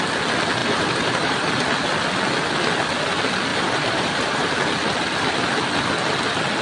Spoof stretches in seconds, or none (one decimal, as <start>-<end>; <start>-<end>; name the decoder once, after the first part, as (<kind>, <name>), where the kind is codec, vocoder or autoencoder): 0.6-1.5 (vocoder, BigVGAN v2); 3.5-4.5